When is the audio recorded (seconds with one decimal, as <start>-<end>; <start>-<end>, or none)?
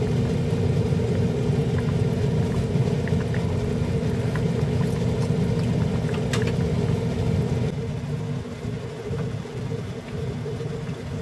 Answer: 0.0-11.2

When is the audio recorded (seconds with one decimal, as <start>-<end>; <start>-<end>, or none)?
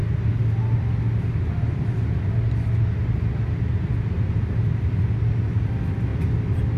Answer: 0.0-6.8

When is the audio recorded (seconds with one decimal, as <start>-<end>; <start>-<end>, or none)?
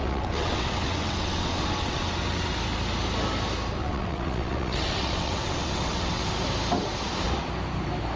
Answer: 2.5-3.8; 6.3-8.2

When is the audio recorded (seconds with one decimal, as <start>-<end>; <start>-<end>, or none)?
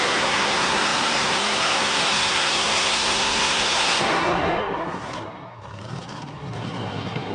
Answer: none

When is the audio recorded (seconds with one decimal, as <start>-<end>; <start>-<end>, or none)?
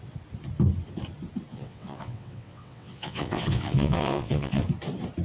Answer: 0.0-1.5; 4.6-5.2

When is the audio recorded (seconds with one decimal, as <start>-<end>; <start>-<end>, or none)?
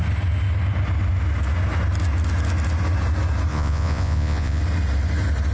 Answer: 0.0-3.5; 4.6-5.5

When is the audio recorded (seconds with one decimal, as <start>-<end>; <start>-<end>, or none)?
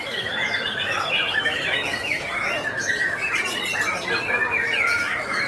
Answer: 3.2-4.2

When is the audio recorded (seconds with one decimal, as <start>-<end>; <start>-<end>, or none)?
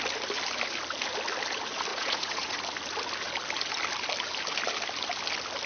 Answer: 0.0-1.9; 2.6-5.7